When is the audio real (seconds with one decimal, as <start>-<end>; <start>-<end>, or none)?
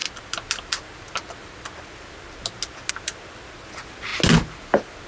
0.0-5.1